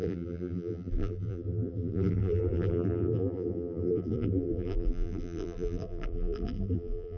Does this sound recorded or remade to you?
remade